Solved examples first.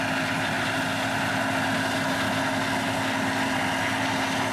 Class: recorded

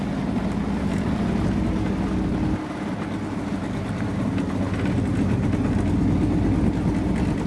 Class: recorded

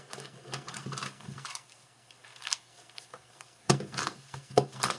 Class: remade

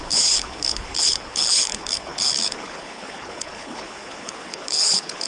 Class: remade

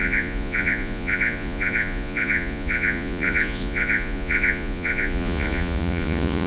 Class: remade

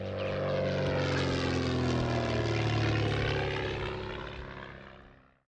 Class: recorded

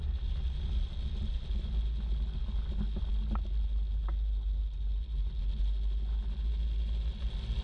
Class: recorded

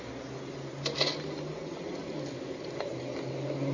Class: recorded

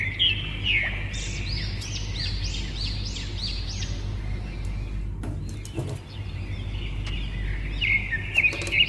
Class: recorded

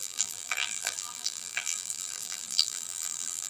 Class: remade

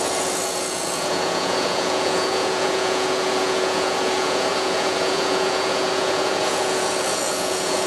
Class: remade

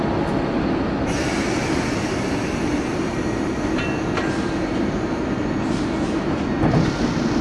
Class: recorded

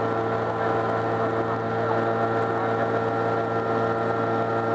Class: recorded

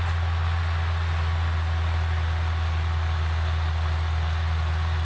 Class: recorded